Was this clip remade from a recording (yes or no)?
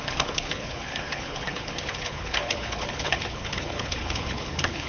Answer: yes